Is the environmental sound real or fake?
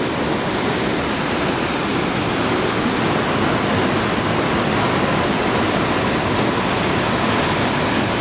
real